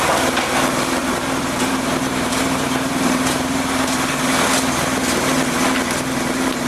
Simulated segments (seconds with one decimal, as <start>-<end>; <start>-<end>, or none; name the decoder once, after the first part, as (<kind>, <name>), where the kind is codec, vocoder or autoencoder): 1.0-4.2 (vocoder, BigVGAN v2)